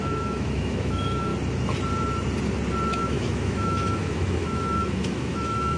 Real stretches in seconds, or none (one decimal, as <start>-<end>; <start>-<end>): 1.3-2.9

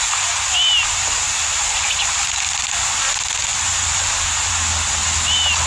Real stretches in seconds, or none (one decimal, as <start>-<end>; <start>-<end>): 0.0-1.4; 2.2-3.5; 4.5-5.7